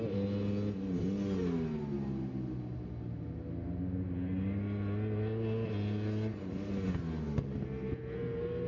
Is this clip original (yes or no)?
yes